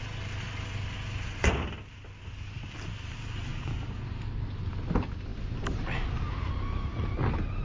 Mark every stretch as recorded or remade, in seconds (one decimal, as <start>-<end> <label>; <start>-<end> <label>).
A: 0.0-7.6 recorded